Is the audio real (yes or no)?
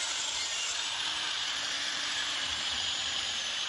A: no